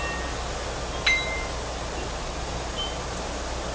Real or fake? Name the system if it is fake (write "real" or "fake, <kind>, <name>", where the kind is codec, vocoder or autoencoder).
real